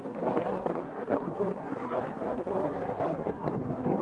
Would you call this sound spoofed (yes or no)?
yes